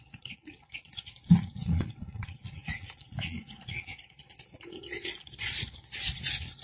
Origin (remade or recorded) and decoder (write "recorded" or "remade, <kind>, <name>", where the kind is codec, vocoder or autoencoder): remade, vocoder, Vocos